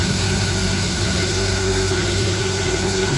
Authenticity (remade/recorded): remade